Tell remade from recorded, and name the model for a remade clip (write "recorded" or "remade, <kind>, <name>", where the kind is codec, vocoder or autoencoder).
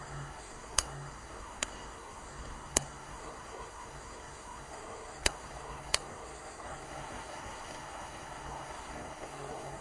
remade, codec, SNAC